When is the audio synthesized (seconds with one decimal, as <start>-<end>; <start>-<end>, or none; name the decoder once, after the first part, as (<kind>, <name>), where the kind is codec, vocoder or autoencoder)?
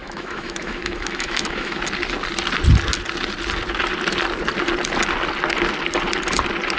0.0-1.8 (autoencoder, DAC-VAE)